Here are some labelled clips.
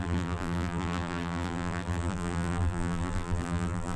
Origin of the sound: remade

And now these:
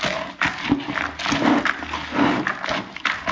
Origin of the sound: recorded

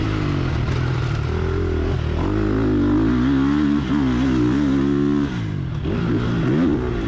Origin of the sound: recorded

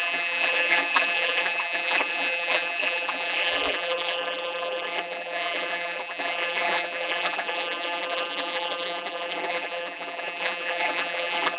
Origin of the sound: remade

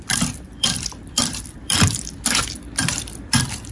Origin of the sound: remade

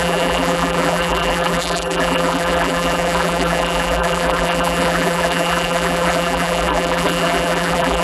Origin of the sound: remade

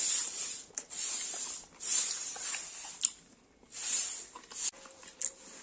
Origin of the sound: recorded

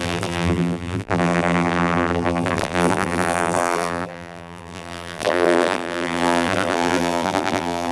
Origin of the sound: remade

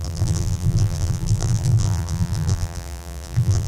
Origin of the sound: remade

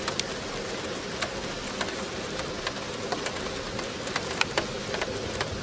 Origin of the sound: remade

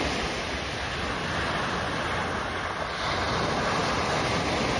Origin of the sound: recorded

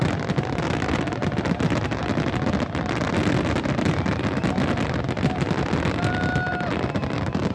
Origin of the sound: recorded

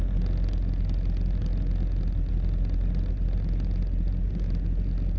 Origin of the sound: recorded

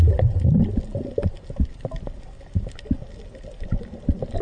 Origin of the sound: recorded